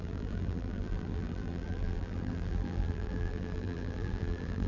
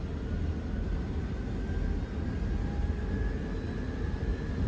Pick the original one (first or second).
second